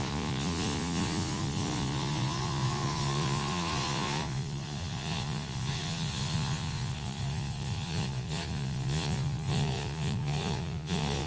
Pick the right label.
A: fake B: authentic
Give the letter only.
A